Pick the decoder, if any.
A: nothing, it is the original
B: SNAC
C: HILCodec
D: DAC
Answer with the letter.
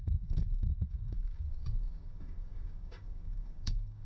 D